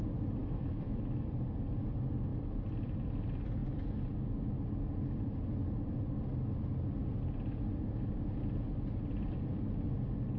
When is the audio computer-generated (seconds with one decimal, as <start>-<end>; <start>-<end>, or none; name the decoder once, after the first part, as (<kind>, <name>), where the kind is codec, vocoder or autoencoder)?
0.4-1.3 (autoencoder, DAC-VAE)